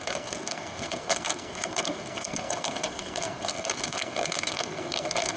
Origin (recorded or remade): remade